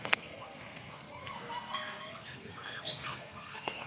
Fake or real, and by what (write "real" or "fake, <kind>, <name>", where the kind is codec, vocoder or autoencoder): fake, codec, SNAC